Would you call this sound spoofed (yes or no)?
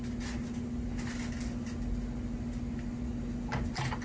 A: no